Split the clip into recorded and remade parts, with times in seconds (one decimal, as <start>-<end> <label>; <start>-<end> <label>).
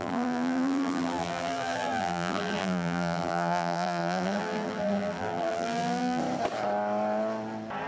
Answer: 0.0-6.2 remade; 6.2-7.9 recorded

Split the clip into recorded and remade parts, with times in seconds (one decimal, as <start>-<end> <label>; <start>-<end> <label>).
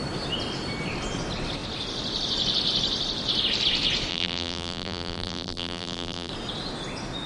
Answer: 0.0-4.1 recorded; 4.1-6.3 remade; 6.3-7.3 recorded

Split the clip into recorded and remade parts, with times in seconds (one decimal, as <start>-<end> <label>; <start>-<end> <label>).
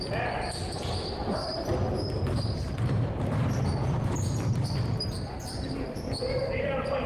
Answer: 0.0-0.6 remade; 0.6-1.2 recorded; 1.2-7.1 remade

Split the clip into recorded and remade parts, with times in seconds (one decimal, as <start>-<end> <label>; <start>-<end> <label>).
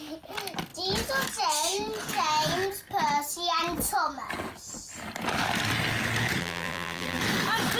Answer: 0.0-6.4 recorded; 6.4-7.2 remade; 7.2-7.8 recorded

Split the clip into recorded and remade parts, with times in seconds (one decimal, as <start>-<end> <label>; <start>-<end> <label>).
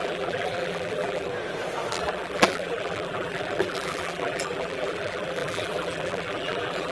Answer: 0.0-1.3 remade; 1.3-1.9 recorded; 1.9-6.9 remade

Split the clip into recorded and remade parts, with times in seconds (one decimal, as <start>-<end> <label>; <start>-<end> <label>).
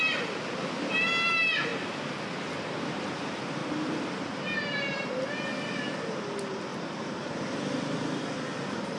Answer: 0.0-1.7 recorded; 1.7-2.3 remade; 2.3-6.7 recorded; 6.7-7.3 remade; 7.3-9.0 recorded